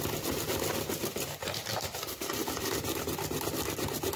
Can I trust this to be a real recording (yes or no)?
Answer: no